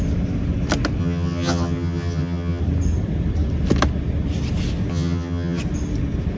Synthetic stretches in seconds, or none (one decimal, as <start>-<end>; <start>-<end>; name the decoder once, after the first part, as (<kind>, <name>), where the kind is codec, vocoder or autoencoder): 1.0-2.6 (vocoder, HiFi-GAN); 4.9-5.6